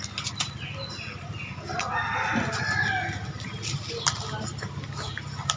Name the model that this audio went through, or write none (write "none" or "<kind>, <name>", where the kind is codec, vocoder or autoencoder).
none